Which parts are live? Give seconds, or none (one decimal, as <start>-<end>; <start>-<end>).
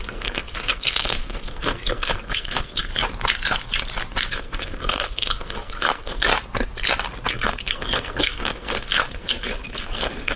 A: 2.9-4.3; 6.3-7.3